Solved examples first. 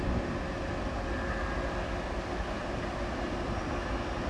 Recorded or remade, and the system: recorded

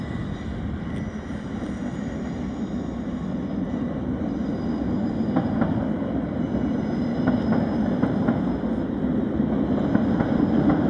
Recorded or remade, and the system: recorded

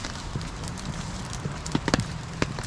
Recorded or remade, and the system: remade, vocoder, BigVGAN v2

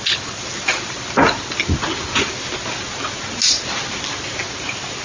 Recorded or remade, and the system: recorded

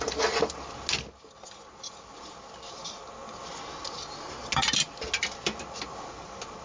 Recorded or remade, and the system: recorded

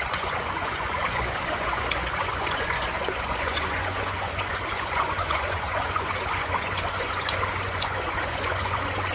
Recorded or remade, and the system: remade, vocoder, Vocos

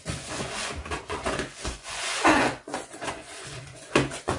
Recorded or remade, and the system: remade, vocoder, Vocos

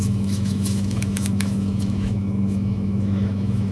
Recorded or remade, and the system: remade, autoencoder, DAC-VAE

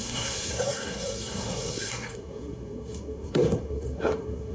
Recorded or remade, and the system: remade, codec, SNAC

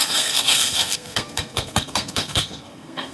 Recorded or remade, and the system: remade, codec, SNAC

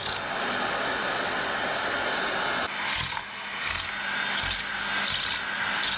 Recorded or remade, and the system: recorded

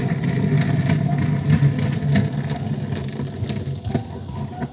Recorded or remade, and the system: recorded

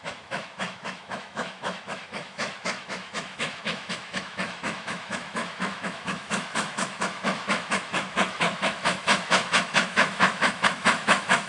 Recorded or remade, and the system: remade, autoencoder, DAC-VAE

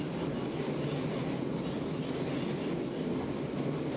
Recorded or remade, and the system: recorded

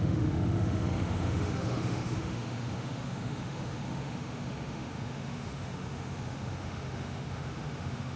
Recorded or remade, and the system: remade, autoencoder, DAC-VAE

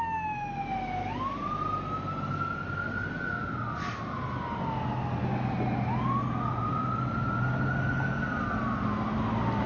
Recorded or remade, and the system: recorded